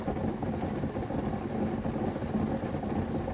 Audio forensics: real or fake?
real